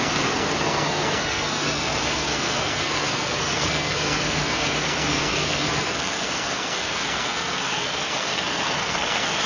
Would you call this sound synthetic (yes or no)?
yes